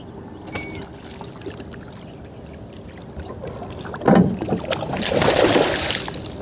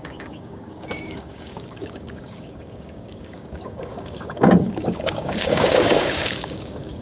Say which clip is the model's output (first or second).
second